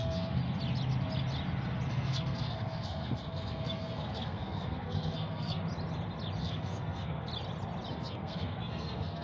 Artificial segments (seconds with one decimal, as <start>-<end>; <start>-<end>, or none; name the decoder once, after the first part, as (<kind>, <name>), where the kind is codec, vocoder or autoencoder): 0.0-0.4 (codec, SNAC); 1.9-5.6; 6.4-7.3; 7.9-9.2

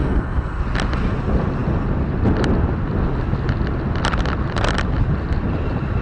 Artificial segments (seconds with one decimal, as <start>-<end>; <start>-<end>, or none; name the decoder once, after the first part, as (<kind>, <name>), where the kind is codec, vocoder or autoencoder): 0.0-0.6 (codec, SNAC)

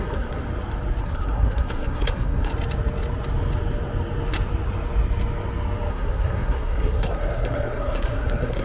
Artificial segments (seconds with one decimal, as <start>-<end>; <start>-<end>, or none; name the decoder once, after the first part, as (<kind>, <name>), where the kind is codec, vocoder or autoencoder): 0.0-0.4 (codec, SNAC); 1.0-2.5; 5.9-8.6

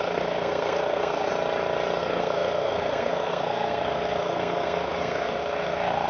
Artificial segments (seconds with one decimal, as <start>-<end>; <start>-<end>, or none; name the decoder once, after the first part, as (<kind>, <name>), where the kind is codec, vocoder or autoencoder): 0.0-1.3 (codec, SNAC); 2.0-6.1

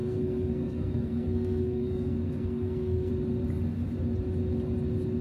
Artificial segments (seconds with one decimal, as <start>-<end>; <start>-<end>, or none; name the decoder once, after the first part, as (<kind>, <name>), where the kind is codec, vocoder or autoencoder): 0.0-3.1 (codec, SNAC)

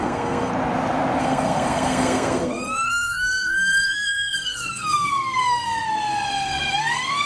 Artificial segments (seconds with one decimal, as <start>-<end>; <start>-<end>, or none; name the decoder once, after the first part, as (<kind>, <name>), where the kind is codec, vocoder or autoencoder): 0.0-0.5 (codec, SNAC); 1.2-7.3

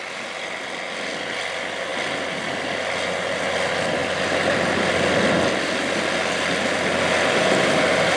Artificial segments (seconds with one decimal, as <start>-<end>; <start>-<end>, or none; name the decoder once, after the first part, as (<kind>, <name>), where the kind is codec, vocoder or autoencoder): none